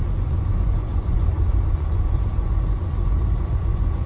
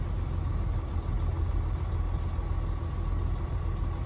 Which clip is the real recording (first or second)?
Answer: second